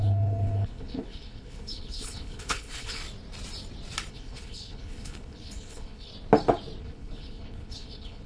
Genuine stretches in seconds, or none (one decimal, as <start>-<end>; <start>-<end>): 3.0-4.1; 6.1-6.8